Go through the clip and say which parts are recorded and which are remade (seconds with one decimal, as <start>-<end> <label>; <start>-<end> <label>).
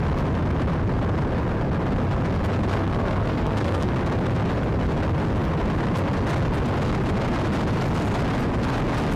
0.0-2.7 recorded; 2.7-3.9 remade; 3.9-9.2 recorded